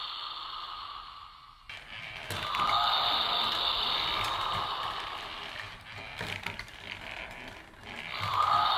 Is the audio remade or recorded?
recorded